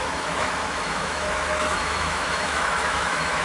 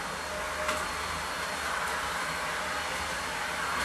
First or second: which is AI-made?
first